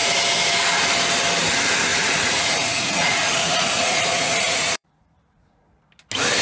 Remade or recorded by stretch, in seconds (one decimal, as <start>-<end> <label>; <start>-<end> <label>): 0.0-1.9 recorded; 1.9-5.7 remade; 5.7-6.4 recorded